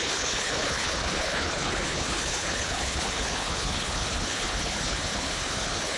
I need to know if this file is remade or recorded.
remade